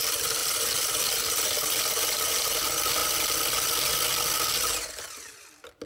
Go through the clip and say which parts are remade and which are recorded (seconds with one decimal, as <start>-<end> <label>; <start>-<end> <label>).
0.0-5.9 recorded